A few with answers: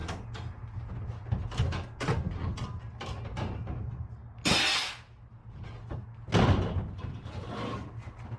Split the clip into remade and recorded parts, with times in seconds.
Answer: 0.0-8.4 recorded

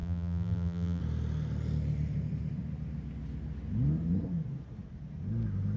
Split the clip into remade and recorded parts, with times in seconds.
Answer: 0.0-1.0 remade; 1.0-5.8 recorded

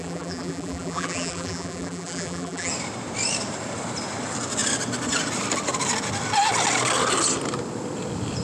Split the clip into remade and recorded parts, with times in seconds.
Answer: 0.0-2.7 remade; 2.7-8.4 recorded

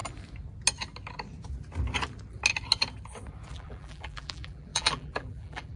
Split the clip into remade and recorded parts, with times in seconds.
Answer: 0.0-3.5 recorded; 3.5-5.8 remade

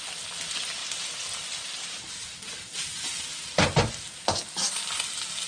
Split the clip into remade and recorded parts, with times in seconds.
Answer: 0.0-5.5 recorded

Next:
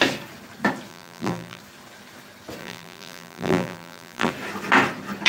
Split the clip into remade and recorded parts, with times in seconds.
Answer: 0.0-0.9 recorded; 0.9-1.6 remade; 1.6-2.6 recorded; 2.6-4.3 remade; 4.3-5.3 recorded